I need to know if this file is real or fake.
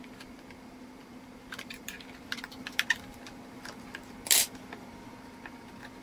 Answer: fake